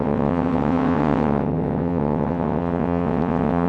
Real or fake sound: fake